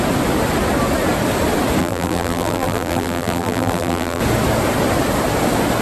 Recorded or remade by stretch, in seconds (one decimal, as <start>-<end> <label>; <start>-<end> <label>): 0.0-1.8 recorded; 1.8-4.2 remade; 4.2-5.8 recorded